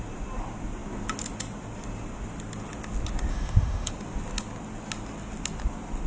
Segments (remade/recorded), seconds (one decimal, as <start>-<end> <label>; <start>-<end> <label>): 0.0-3.3 recorded; 3.3-3.9 remade; 3.9-6.1 recorded